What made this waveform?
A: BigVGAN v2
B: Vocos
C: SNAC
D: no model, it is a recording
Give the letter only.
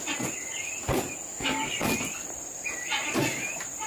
D